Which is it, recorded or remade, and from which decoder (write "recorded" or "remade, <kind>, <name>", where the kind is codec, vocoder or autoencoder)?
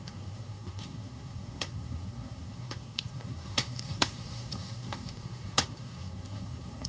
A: remade, codec, SNAC